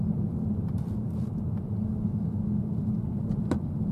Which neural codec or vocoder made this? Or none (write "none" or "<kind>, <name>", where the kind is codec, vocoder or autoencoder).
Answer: none